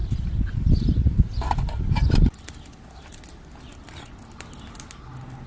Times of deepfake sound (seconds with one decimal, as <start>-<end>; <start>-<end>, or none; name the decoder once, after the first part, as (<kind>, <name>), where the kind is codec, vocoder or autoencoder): none

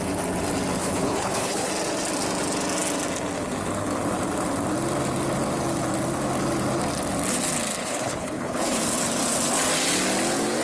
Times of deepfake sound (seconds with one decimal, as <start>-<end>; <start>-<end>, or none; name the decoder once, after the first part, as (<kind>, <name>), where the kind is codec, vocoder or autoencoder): 0.8-1.7 (codec, HILCodec); 7.8-8.8

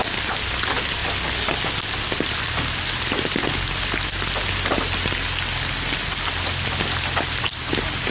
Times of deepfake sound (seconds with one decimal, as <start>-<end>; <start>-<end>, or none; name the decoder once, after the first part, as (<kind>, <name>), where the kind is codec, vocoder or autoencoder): none

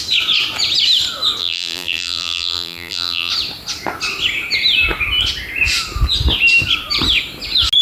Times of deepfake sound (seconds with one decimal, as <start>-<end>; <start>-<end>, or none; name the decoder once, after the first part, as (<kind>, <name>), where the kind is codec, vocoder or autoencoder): 1.4-3.3 (vocoder, BigVGAN v2)